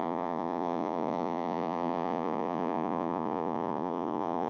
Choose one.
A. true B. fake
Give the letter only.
B